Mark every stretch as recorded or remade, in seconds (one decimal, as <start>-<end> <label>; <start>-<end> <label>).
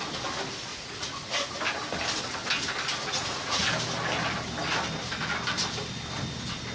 0.0-0.7 recorded; 0.7-1.5 remade; 1.5-3.0 recorded; 3.0-3.6 remade; 3.6-6.7 recorded